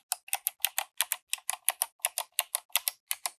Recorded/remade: recorded